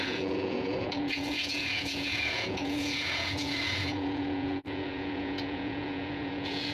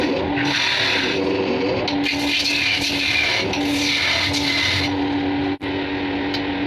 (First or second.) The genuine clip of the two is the second